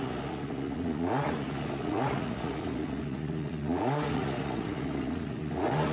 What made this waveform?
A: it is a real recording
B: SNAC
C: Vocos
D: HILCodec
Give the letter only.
C